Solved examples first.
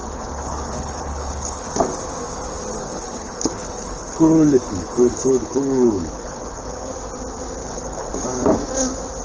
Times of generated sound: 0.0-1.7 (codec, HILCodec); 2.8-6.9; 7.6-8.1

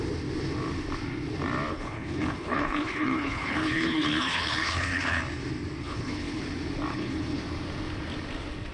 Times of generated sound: 1.7-5.2 (codec, HILCodec); 5.8-6.4; 6.9-7.4

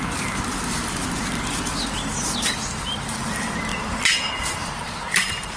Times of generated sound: none

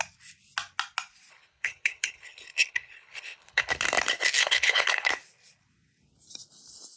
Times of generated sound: 1.3-3.7 (codec, HILCodec); 4.4-5.1

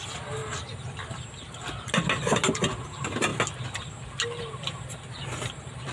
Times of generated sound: none

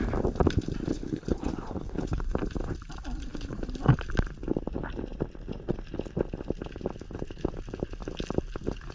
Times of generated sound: 0.9-2.2 (codec, HILCodec)